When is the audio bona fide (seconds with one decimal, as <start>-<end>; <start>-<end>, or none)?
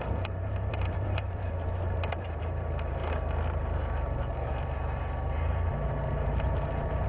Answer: 3.0-3.6